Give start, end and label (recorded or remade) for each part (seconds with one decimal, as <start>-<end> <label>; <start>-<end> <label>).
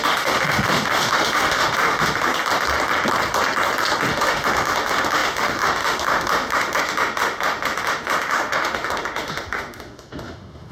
0.0-2.3 remade; 2.3-4.1 recorded; 4.1-10.7 remade